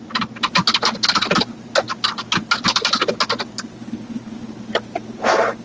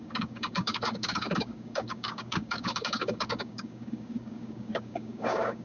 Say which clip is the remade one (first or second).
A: second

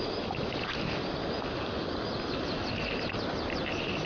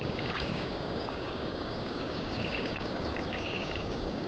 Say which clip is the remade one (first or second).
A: second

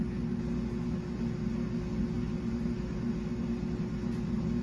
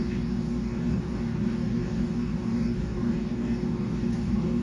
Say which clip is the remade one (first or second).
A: second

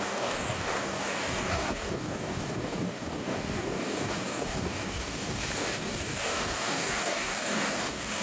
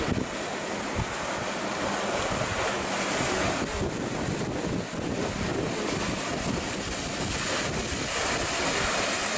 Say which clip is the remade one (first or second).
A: first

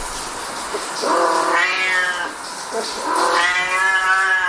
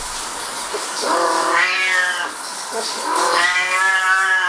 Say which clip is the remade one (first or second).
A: second